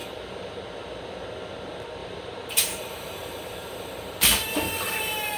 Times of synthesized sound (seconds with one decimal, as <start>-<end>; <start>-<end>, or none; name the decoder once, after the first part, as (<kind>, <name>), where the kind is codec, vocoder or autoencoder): 0.0-0.6 (vocoder, BigVGAN v2); 2.0-5.4